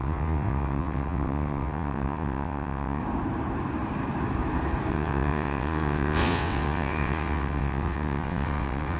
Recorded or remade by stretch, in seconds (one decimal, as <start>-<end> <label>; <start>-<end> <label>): 0.0-3.0 remade; 3.0-4.9 recorded; 4.9-9.0 remade